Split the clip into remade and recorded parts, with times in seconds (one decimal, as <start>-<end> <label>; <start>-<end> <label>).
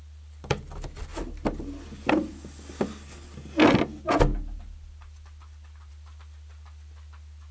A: 0.0-7.5 recorded